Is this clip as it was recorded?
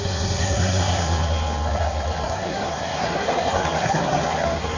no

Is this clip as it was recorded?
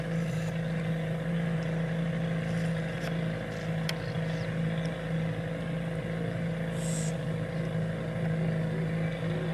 yes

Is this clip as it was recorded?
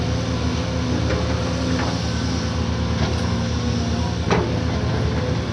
yes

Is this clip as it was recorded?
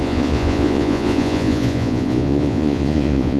no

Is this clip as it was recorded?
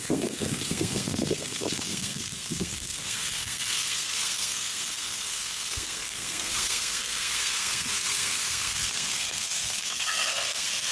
no